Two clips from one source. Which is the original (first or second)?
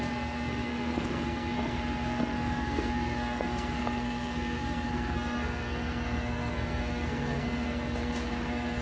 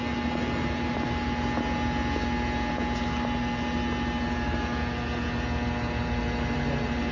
second